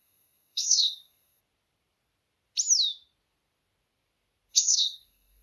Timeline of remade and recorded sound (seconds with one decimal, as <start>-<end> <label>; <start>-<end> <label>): 0.0-1.4 remade; 1.4-4.5 recorded; 4.5-5.4 remade